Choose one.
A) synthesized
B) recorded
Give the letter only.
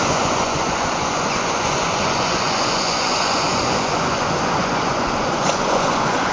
A